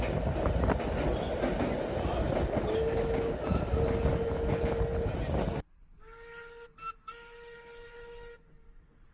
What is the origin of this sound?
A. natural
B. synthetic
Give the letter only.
A